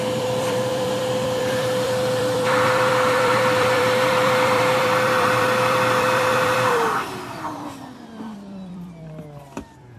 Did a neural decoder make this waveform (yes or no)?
yes